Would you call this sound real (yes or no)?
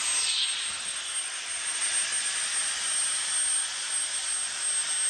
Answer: yes